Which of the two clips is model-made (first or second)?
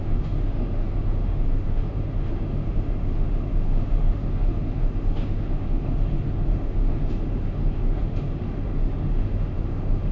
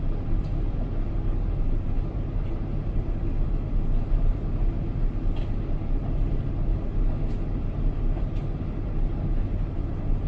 first